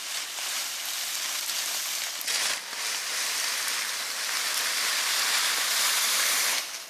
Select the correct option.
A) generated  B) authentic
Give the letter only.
B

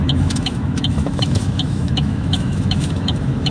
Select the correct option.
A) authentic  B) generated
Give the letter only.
B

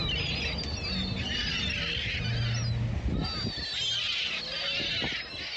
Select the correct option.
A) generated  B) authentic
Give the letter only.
B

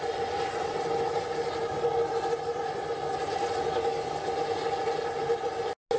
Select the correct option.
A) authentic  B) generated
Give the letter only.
A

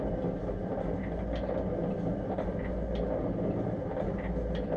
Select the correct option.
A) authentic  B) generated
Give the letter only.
A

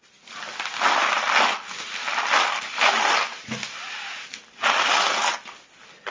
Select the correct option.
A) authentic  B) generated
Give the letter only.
A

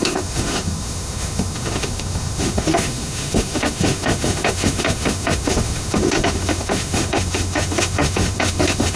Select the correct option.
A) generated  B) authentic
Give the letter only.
A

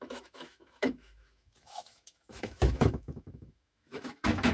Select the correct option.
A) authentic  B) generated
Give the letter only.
B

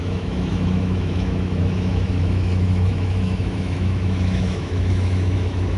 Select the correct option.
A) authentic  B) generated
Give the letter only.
B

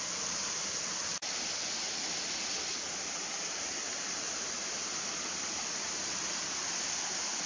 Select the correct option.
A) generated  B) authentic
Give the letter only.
B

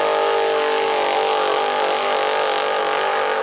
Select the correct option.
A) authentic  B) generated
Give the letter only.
B